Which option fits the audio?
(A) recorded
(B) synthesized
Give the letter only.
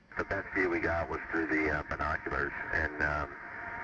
B